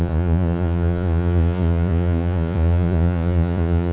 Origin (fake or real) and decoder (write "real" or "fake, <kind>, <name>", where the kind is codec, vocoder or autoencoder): fake, vocoder, Vocos